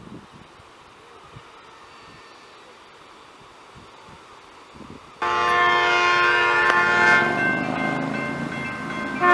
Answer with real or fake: real